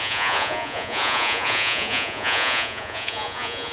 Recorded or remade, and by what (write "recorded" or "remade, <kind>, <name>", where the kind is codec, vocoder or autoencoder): remade, vocoder, Vocos